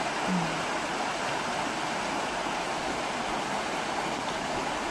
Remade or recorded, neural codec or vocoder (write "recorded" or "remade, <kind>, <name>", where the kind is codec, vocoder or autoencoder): recorded